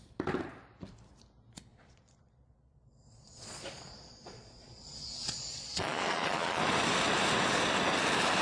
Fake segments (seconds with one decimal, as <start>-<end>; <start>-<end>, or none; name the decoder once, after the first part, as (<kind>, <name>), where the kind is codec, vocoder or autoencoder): 1.7-6.6 (vocoder, Vocos)